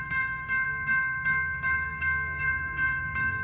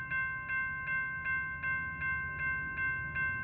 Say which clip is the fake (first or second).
first